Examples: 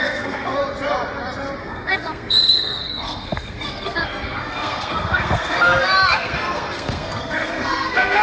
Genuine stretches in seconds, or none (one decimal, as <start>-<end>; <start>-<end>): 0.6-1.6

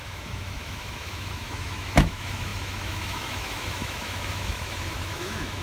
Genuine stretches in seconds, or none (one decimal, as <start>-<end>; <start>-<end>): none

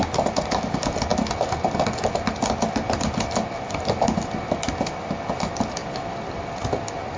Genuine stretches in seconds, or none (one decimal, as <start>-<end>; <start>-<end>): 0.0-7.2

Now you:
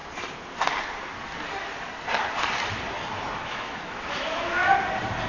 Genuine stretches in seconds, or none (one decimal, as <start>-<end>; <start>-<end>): 0.0-3.2; 4.6-5.3

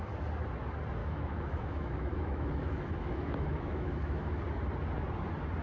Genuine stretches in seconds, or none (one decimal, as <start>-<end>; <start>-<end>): 0.0-1.0; 4.4-5.6